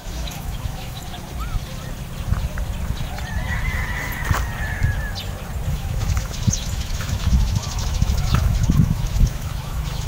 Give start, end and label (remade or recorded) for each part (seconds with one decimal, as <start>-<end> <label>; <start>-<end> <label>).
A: 0.0-1.0 remade; 1.0-5.7 recorded; 5.7-10.1 remade